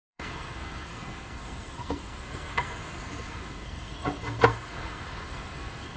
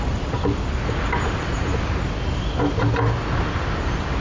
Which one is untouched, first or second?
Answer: second